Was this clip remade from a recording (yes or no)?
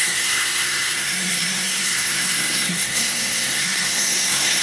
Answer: yes